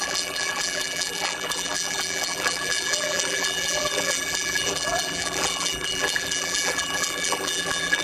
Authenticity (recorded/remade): remade